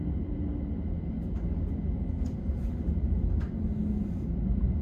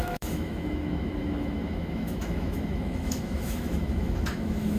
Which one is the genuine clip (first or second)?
first